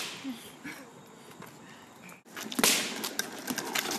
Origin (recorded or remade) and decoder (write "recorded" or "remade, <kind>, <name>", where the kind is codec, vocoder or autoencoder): recorded